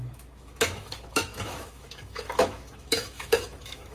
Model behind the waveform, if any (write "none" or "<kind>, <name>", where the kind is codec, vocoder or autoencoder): autoencoder, DAC-VAE